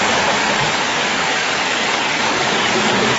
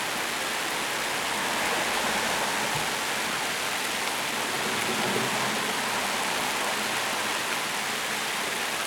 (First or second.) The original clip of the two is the second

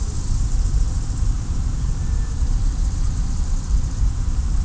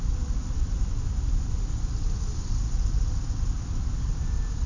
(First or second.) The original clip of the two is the second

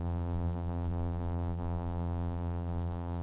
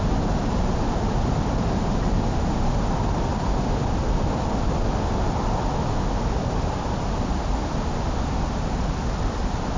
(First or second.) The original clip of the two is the second